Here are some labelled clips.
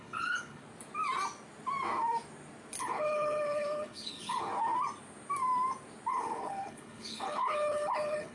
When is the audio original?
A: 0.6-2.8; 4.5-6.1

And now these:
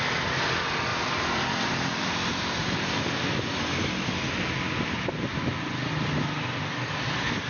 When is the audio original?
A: 0.0-0.9; 4.4-7.5

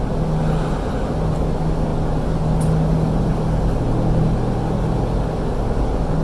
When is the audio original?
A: 0.0-6.2

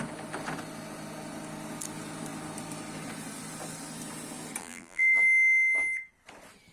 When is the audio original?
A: 0.0-4.6; 5.2-6.7

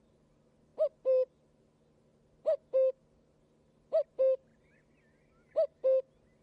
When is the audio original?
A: 0.0-6.4

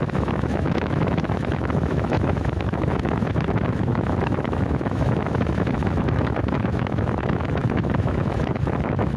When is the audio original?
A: none

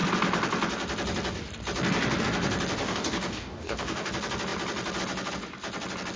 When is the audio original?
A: 0.0-2.8; 4.1-6.2

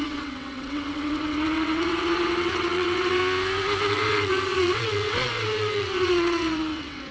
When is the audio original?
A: 3.2-3.9